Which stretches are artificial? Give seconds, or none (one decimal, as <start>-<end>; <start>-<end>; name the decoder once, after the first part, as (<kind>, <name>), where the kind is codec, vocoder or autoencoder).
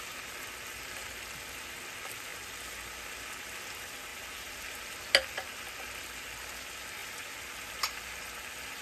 4.1-4.8 (vocoder, BigVGAN v2)